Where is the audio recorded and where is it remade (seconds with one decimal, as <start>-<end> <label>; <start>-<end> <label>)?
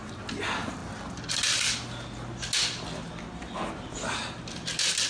0.0-5.1 recorded